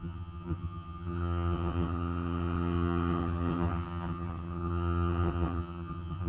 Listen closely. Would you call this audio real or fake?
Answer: fake